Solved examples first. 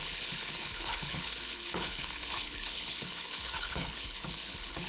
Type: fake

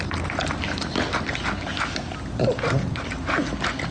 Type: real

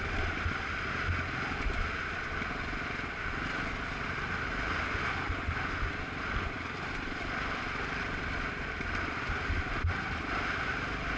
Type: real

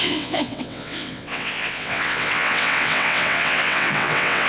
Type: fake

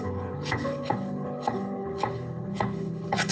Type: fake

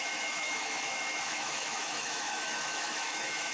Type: fake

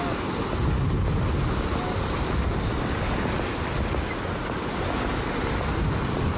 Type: real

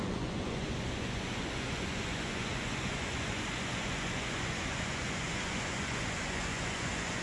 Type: fake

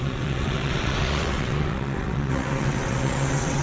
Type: fake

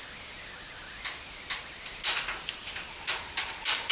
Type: real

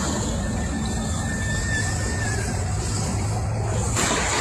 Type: real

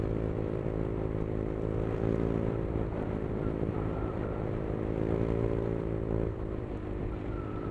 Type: fake